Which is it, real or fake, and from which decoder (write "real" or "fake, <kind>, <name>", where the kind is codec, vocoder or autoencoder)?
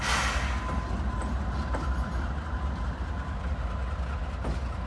real